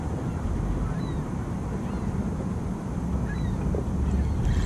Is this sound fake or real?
real